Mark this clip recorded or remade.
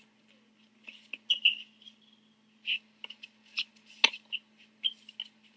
recorded